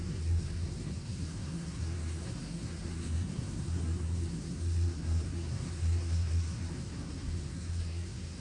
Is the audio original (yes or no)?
no